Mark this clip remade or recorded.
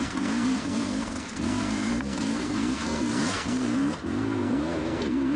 remade